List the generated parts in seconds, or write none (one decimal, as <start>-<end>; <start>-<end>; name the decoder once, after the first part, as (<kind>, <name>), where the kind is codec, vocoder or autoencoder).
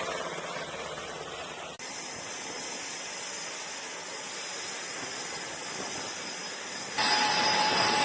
none